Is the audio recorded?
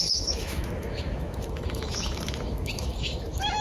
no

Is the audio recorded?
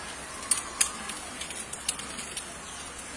yes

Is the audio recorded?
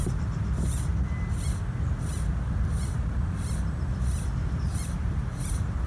yes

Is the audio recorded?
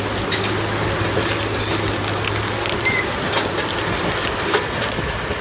yes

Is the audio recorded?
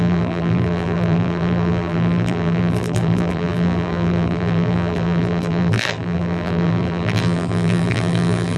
no